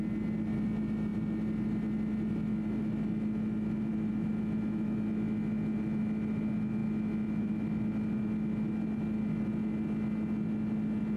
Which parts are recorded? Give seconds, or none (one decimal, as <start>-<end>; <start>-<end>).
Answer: 0.0-11.2